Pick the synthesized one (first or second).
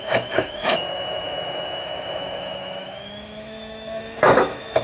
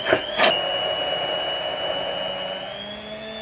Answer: first